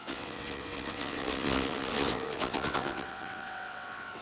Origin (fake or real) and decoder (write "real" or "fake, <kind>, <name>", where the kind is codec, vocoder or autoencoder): fake, vocoder, WaveNeXt